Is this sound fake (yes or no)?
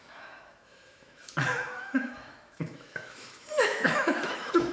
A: yes